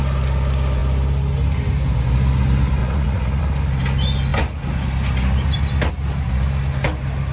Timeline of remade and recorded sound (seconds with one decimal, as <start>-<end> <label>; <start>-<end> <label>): 0.0-2.8 recorded; 2.8-3.4 remade; 3.4-7.3 recorded